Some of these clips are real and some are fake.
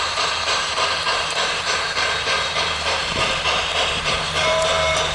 fake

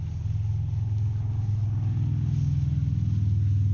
real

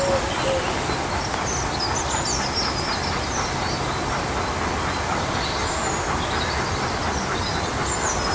real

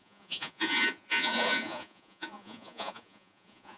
fake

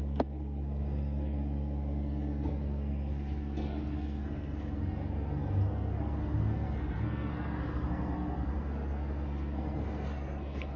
fake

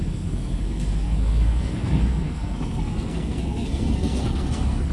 fake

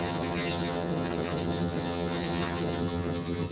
fake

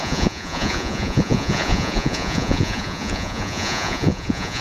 fake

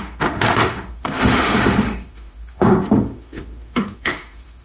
fake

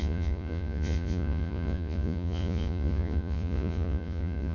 fake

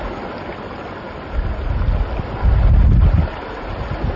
real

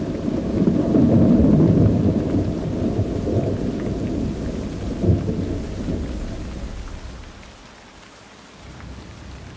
real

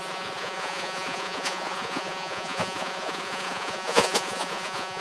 fake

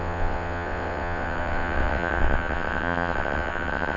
fake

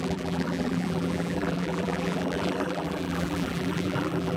fake